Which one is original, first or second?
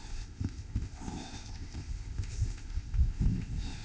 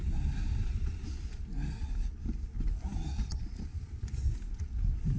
second